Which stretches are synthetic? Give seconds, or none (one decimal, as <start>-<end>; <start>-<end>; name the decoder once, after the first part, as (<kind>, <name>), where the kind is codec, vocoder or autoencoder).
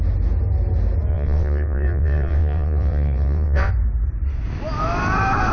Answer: 1.1-3.7 (vocoder, WaveNeXt)